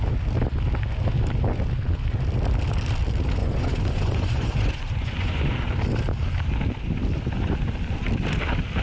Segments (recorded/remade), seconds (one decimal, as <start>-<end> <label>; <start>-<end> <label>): 0.0-3.4 recorded; 3.4-5.5 remade; 5.5-8.8 recorded